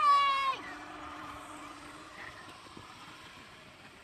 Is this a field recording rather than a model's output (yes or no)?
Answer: no